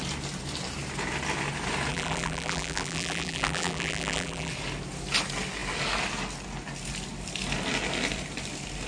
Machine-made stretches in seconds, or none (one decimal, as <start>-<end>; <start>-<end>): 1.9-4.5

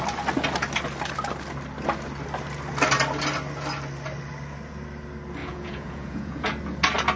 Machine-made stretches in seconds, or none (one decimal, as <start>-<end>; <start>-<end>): 5.4-6.5

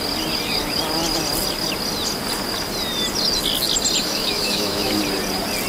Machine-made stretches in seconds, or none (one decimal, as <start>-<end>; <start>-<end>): 4.0-5.0